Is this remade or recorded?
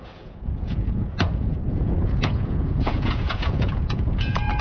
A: remade